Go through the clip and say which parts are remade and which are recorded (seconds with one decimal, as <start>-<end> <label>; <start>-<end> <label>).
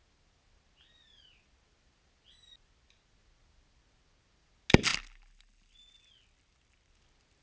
0.0-7.4 recorded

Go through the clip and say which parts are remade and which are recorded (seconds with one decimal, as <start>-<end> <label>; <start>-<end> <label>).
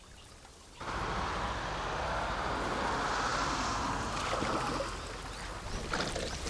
0.0-6.5 recorded